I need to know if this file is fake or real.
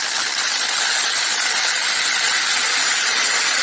real